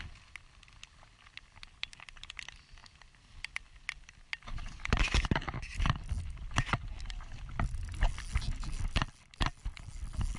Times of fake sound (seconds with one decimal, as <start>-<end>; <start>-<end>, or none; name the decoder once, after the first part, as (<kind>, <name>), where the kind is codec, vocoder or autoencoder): none